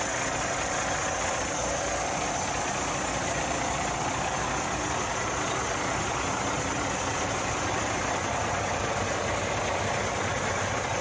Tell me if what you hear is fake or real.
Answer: real